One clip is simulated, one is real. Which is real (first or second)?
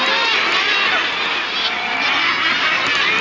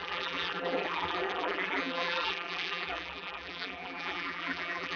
first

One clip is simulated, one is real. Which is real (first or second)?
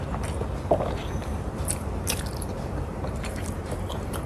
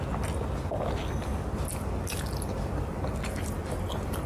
second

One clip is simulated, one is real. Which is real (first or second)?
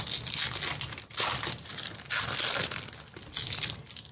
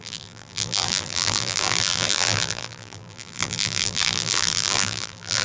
first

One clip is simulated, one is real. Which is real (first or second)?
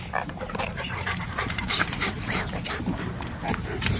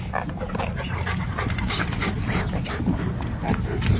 second